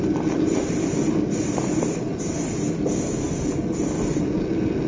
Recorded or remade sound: recorded